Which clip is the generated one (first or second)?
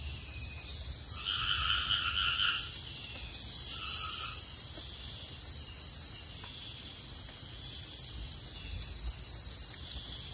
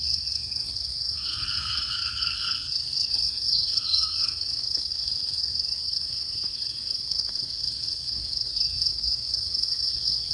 second